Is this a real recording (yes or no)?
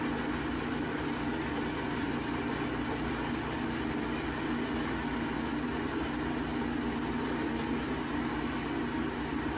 yes